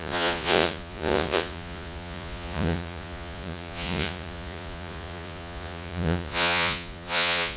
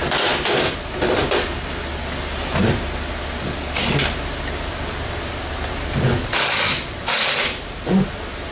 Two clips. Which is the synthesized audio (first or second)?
first